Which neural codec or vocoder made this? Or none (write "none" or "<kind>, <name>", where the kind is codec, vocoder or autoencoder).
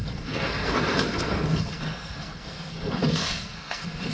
codec, SNAC